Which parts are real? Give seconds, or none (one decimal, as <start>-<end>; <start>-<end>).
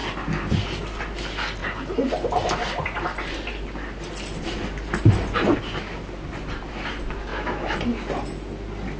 0.0-7.3; 7.8-9.0